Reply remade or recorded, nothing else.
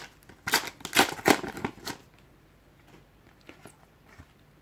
recorded